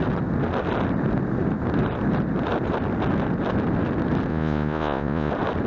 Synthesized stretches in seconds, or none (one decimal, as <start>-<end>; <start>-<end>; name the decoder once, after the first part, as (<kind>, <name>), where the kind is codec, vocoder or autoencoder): 4.3-5.3 (vocoder, Vocos)